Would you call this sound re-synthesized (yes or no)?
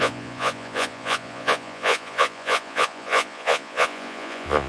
yes